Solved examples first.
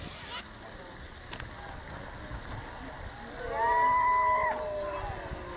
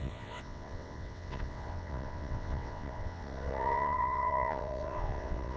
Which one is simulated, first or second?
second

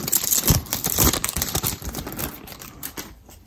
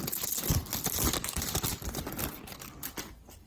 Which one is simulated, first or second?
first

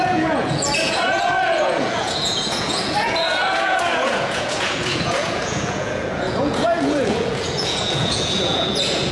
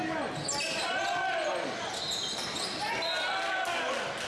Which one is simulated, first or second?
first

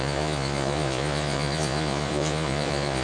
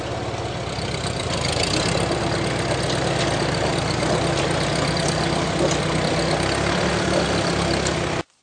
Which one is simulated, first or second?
first